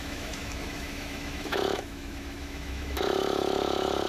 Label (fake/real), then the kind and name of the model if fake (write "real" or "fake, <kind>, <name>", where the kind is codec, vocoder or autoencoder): fake, autoencoder, DAC-VAE